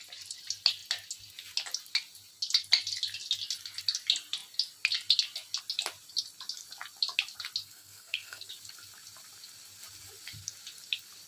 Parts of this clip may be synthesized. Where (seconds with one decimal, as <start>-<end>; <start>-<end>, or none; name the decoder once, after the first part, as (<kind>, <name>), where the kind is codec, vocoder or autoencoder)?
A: 7.6-8.5 (codec, SNAC)